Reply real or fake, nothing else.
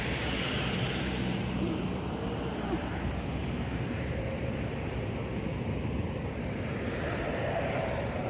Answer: fake